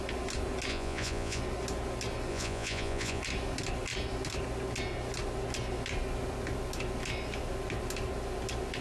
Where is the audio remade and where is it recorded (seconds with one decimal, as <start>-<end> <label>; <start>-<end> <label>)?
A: 0.0-0.7 recorded; 0.7-1.4 remade; 1.4-2.3 recorded; 2.3-3.2 remade; 3.2-8.8 recorded